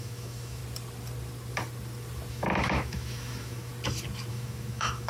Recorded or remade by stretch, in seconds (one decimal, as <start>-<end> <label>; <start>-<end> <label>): 0.0-0.6 remade; 0.6-2.3 recorded; 2.3-3.7 remade; 3.7-4.3 recorded; 4.3-5.1 remade

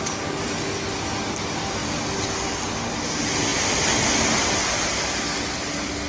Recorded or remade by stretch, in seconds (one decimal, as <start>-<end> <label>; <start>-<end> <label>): 0.0-6.1 recorded